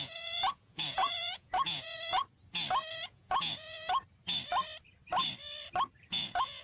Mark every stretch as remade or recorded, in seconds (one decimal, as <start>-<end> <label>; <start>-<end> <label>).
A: 0.0-2.2 remade; 2.2-2.9 recorded; 2.9-4.0 remade; 4.0-6.1 recorded; 6.1-6.6 remade